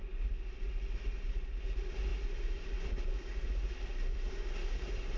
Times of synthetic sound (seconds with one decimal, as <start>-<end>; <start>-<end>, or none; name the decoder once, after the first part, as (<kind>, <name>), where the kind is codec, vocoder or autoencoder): none